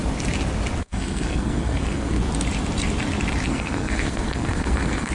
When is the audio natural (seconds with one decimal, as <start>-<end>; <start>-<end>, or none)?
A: 0.0-0.8; 2.2-3.5